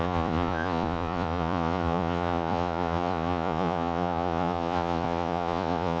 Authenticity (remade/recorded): remade